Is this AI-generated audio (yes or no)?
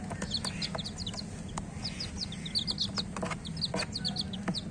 no